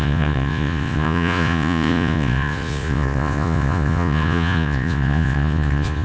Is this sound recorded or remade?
remade